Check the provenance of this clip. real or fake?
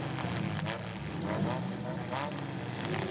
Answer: real